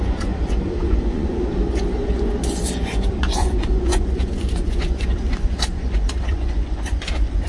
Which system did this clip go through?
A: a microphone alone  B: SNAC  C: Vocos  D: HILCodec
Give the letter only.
C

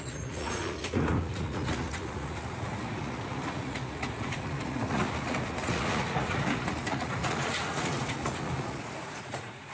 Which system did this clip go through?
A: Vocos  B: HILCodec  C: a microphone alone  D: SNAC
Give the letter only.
A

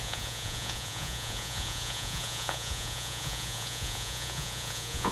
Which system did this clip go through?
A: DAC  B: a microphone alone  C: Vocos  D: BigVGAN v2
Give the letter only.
C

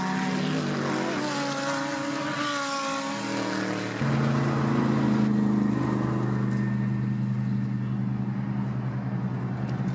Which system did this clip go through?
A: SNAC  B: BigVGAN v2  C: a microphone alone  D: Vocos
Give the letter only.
C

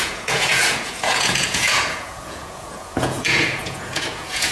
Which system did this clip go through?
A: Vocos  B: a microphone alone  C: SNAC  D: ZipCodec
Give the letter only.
A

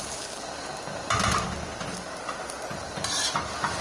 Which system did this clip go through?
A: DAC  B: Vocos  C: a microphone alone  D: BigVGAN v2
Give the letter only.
C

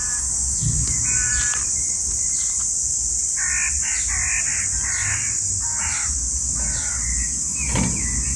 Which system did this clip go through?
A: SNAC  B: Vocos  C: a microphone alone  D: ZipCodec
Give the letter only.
C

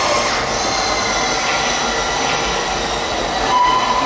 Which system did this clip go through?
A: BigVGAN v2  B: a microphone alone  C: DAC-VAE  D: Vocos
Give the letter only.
B